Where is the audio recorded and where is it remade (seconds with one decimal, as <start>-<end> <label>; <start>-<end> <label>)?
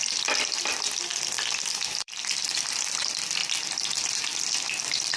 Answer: 0.0-1.1 remade; 1.1-2.0 recorded; 2.0-5.2 remade